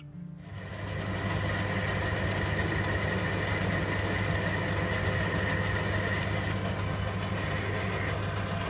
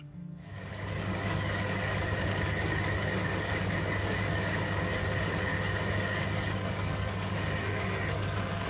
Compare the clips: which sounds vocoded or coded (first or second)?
second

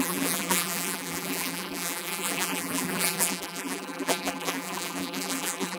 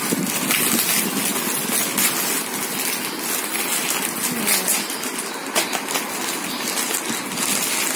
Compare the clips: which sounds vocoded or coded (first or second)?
first